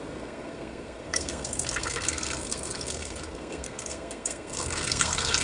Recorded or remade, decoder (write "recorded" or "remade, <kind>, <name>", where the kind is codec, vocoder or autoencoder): remade, codec, SNAC